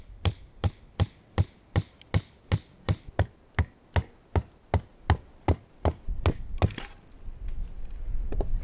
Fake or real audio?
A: real